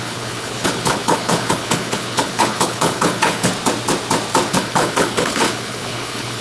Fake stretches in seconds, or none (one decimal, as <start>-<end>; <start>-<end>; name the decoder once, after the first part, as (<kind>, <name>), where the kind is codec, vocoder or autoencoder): 0.0-3.5 (codec, HILCodec); 4.5-6.4